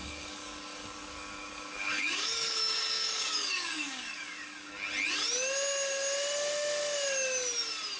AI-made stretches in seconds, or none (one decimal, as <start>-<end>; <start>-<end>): 0.0-4.7